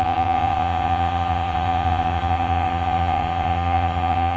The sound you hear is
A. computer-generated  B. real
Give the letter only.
A